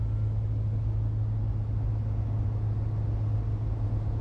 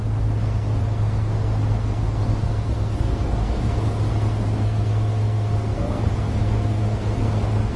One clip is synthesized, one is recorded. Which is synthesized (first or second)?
second